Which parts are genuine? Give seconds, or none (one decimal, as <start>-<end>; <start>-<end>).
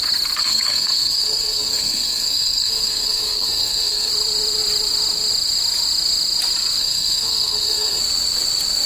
0.0-0.4; 4.1-6.8; 8.0-8.9